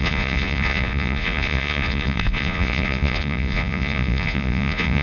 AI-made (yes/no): yes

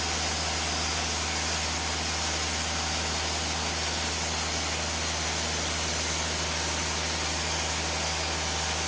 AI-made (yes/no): no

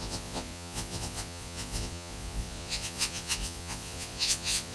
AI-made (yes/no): yes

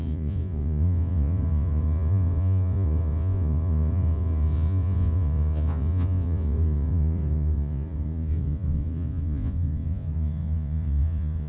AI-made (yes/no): yes